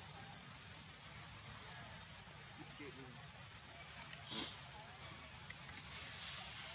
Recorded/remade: recorded